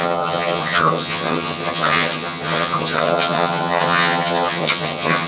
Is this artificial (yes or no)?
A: yes